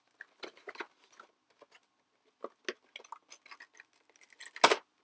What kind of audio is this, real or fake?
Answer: real